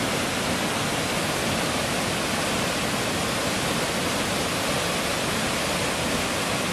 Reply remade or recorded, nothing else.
recorded